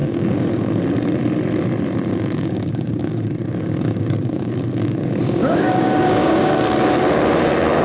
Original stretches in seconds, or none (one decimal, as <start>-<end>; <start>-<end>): 0.8-2.1; 6.6-7.8